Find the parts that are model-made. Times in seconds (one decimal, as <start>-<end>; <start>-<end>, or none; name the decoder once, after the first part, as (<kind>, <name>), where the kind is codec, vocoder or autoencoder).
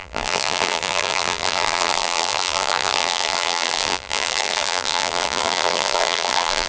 0.0-6.7 (vocoder, BigVGAN v2)